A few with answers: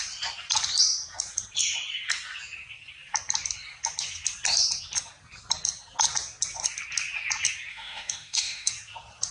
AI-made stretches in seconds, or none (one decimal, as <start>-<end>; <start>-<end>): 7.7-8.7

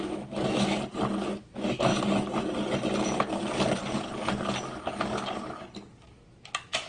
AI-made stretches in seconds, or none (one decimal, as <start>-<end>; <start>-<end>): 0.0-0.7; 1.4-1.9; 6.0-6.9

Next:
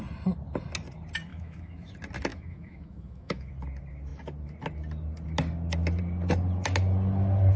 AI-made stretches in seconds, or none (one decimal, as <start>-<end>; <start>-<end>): 1.3-1.9; 2.3-3.5

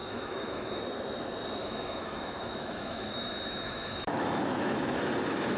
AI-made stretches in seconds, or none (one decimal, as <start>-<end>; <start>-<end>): 0.0-0.8; 1.6-5.0

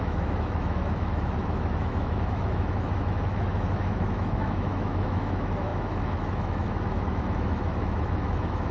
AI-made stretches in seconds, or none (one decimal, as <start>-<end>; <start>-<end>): 0.0-8.7